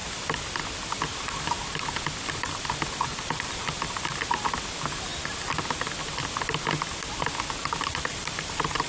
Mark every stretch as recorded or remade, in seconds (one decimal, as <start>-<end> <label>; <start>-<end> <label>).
0.0-3.1 recorded; 3.1-3.7 remade; 3.7-7.9 recorded; 7.9-8.9 remade